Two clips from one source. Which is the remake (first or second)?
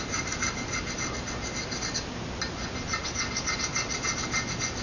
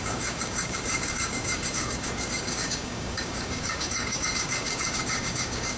second